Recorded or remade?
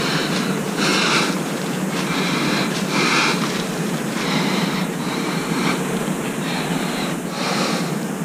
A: remade